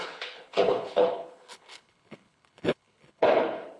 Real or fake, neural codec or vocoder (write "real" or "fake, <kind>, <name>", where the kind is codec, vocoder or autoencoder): fake, codec, HILCodec